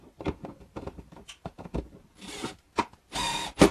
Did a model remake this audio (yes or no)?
no